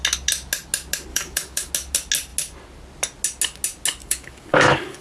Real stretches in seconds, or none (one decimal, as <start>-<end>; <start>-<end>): 0.0-1.1; 1.7-4.0